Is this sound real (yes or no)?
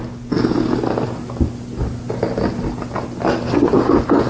yes